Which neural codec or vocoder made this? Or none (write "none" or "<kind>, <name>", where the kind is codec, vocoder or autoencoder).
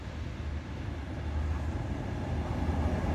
none